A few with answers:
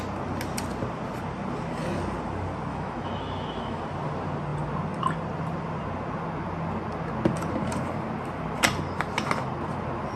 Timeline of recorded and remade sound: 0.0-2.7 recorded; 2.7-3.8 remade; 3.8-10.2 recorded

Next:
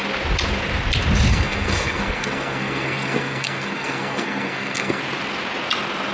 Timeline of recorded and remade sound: 0.0-1.3 recorded; 1.3-5.0 remade; 5.0-6.1 recorded

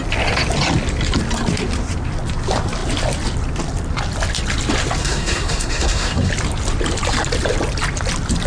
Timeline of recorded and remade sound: 0.0-5.0 recorded; 5.0-6.3 remade; 6.3-8.5 recorded

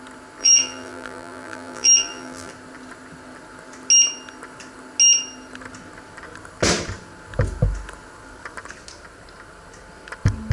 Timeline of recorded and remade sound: 0.0-0.4 recorded; 0.4-2.5 remade; 2.5-10.5 recorded

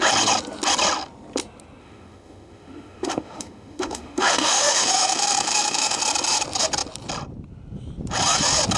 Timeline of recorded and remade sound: 0.0-1.8 recorded; 1.8-6.0 remade; 6.0-8.8 recorded

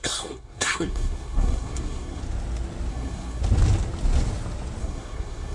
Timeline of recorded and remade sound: 0.0-2.2 remade; 2.2-2.9 recorded; 2.9-3.4 remade; 3.4-4.8 recorded; 4.8-5.5 remade